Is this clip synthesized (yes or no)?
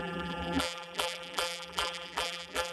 yes